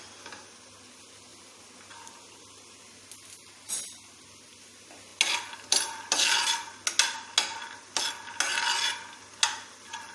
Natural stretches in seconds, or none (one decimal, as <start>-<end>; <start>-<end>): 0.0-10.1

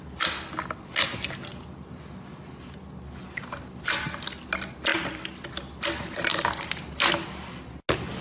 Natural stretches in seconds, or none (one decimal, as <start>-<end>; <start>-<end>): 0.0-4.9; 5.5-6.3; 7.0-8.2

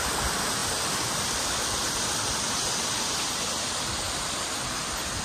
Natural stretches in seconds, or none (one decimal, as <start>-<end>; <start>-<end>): 0.0-5.2

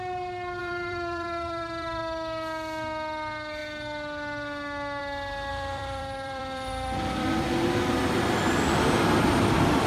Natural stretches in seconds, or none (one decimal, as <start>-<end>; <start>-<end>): 0.0-0.6; 2.0-5.5; 7.8-9.9

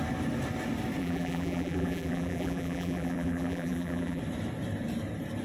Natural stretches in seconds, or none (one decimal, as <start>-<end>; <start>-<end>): 0.0-1.0; 4.2-5.4

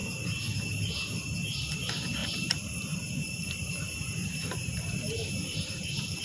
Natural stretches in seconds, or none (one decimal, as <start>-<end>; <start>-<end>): 0.0-2.2